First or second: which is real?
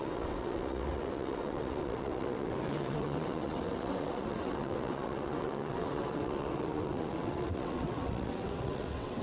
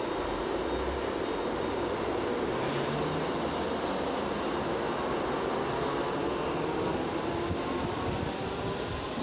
second